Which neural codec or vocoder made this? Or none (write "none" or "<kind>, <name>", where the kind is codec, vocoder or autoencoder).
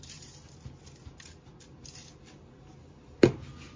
none